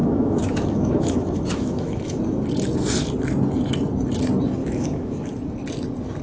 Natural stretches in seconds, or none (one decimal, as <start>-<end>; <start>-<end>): 2.2-4.6; 5.3-6.2